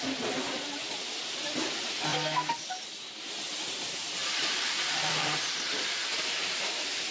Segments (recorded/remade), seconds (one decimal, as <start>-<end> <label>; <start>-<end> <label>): 0.0-4.2 recorded; 4.2-6.6 remade; 6.6-7.1 recorded